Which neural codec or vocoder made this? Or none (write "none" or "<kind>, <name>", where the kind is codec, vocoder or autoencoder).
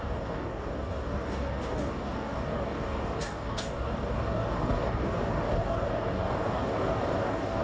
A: codec, DAC